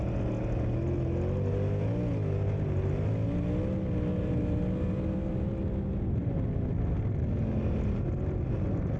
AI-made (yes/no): no